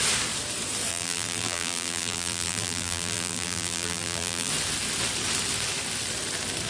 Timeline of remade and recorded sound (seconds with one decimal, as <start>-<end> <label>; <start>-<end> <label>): 0.0-0.9 recorded; 0.9-4.5 remade; 4.5-6.7 recorded

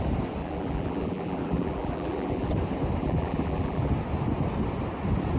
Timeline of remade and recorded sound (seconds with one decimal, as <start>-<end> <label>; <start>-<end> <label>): 0.0-0.4 recorded; 0.4-2.5 remade; 2.5-3.0 recorded; 3.0-3.9 remade; 3.9-5.4 recorded

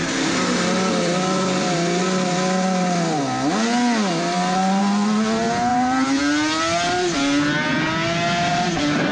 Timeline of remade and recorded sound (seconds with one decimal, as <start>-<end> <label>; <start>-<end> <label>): 0.0-5.7 recorded; 5.7-6.2 remade; 6.2-8.5 recorded; 8.5-9.1 remade

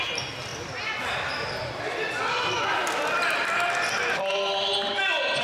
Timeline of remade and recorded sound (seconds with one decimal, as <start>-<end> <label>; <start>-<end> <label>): 0.0-5.4 recorded

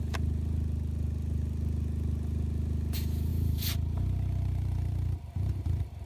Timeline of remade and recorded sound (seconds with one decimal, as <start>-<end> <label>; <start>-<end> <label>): 0.0-3.3 recorded; 3.3-6.1 remade

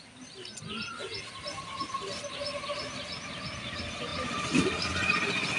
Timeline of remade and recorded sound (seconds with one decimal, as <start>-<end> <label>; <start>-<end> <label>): 0.0-4.1 recorded; 4.1-4.9 remade; 4.9-5.6 recorded

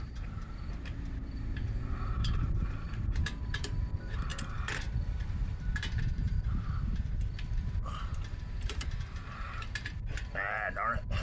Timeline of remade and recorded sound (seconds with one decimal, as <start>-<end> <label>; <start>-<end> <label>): 0.0-11.2 remade

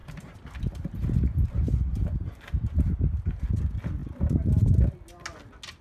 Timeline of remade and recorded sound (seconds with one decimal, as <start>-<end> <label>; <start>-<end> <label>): 0.0-3.5 remade; 3.5-5.8 recorded